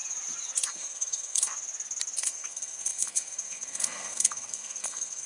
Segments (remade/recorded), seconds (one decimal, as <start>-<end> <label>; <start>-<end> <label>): 0.0-0.7 recorded; 0.7-1.5 remade; 1.5-2.2 recorded; 2.2-5.3 remade